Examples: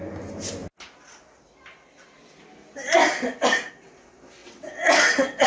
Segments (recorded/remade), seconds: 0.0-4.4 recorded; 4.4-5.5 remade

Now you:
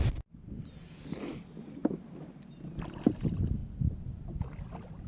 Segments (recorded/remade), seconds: 0.0-5.1 recorded

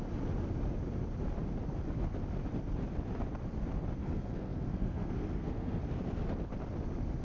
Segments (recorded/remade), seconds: 0.0-4.0 recorded; 4.0-5.8 remade; 5.8-7.2 recorded

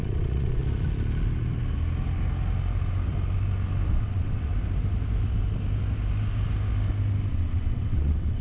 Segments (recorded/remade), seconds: 0.0-0.6 remade; 0.6-3.9 recorded; 3.9-4.5 remade; 4.5-7.3 recorded; 7.3-8.4 remade

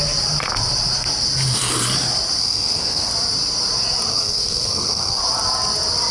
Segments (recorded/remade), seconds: 0.0-2.4 recorded; 2.4-3.1 remade; 3.1-4.1 recorded; 4.1-5.2 remade; 5.2-6.1 recorded

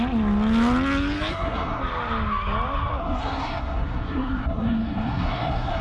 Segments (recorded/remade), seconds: 0.0-1.3 recorded; 1.3-1.8 remade; 1.8-3.0 recorded; 3.0-5.8 remade